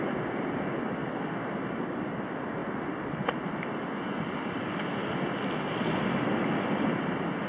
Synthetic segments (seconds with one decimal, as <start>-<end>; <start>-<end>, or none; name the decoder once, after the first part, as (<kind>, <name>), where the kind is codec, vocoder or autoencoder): none